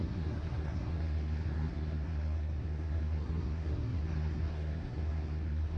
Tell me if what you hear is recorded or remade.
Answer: remade